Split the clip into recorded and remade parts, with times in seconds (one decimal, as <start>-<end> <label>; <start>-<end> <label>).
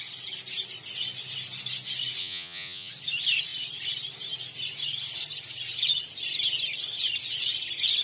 0.0-2.2 recorded; 2.2-2.9 remade; 2.9-8.0 recorded